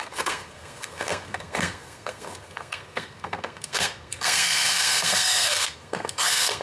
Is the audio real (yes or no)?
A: no